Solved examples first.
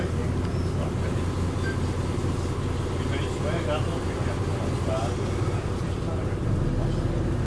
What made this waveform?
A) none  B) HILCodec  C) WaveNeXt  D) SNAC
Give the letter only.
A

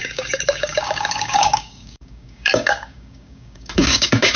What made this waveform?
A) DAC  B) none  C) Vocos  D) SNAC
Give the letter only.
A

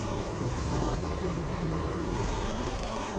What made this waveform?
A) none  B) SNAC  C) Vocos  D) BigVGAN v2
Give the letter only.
B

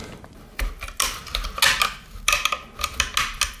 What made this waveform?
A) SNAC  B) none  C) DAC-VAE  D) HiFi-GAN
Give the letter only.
B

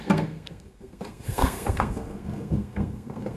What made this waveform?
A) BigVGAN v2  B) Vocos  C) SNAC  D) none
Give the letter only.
C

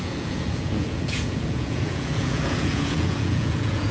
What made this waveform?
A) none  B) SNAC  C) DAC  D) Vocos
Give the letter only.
D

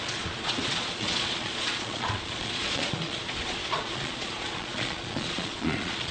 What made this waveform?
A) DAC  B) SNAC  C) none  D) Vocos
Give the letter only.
D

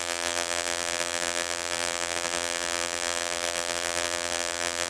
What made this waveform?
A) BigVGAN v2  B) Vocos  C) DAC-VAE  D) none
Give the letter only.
A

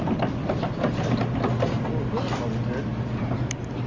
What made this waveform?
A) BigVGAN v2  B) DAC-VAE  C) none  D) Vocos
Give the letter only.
C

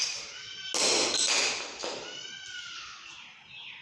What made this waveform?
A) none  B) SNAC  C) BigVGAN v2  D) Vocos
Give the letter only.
A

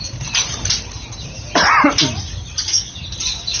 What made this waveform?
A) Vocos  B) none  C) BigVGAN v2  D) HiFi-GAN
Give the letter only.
B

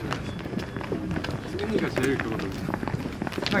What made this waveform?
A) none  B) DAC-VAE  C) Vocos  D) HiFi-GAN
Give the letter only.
A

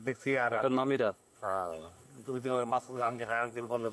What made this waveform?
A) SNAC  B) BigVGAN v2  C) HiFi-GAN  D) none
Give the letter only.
A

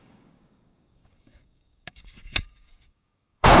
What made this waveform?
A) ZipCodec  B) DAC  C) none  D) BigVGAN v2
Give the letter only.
B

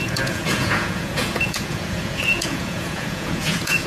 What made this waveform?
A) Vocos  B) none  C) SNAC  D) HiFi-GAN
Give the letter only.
A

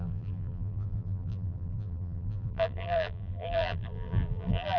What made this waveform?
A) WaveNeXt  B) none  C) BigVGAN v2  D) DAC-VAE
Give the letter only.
C